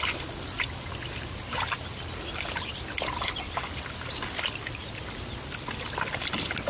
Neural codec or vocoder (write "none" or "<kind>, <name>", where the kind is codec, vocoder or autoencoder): none